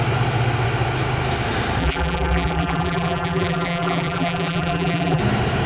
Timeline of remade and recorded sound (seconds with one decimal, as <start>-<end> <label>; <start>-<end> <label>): 0.0-1.8 recorded; 1.8-5.2 remade; 5.2-5.7 recorded